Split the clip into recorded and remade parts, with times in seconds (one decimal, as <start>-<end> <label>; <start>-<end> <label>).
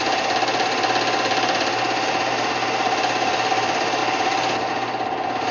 0.0-5.5 recorded